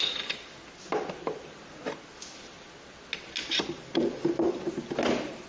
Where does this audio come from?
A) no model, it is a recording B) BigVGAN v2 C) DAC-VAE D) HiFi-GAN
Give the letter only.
A